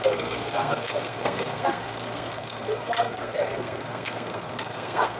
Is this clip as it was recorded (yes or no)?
no